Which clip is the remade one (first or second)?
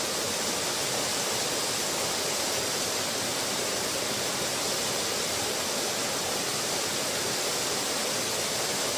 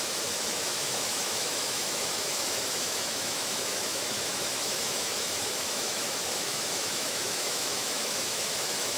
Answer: second